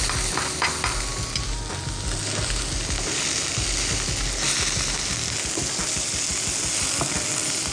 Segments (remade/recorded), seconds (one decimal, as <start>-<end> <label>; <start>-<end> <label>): 0.0-7.7 recorded